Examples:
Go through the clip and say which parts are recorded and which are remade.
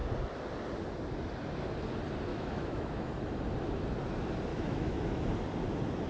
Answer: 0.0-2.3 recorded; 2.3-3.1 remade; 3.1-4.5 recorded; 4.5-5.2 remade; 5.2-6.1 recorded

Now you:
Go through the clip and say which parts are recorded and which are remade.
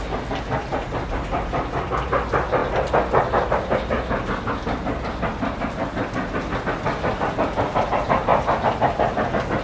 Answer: 0.0-9.6 recorded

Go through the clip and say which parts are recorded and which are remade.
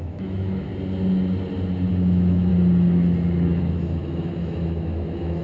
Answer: 0.0-0.7 remade; 0.7-1.9 recorded; 1.9-2.5 remade; 2.5-3.6 recorded; 3.6-5.4 remade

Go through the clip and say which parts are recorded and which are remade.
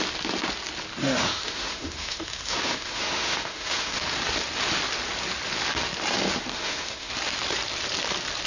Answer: 0.0-1.0 recorded; 1.0-4.0 remade; 4.0-6.5 recorded; 6.5-7.1 remade; 7.1-8.5 recorded